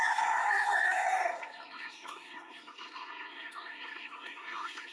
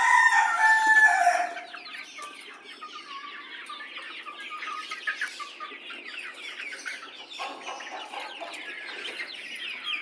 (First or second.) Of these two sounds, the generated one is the first